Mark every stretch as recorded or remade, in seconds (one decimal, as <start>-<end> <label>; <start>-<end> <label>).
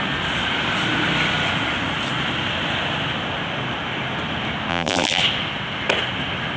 0.0-4.7 recorded; 4.7-5.2 remade; 5.2-6.6 recorded